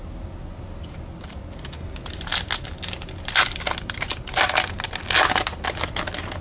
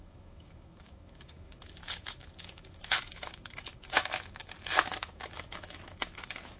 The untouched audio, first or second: first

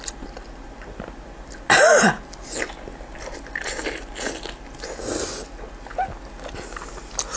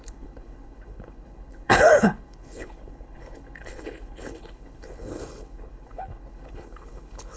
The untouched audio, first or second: first